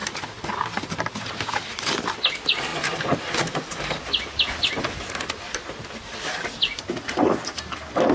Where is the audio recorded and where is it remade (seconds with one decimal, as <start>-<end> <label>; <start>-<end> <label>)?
0.0-8.1 recorded